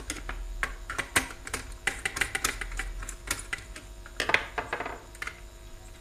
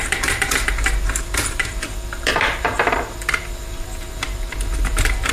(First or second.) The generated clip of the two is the second